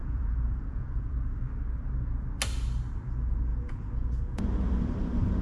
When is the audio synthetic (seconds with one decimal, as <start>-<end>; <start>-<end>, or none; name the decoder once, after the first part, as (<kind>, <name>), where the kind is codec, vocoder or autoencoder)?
0.0-1.1 (vocoder, Vocos); 3.5-4.4